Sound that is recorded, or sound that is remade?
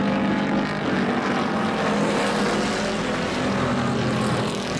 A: recorded